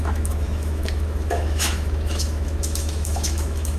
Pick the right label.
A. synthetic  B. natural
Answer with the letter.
A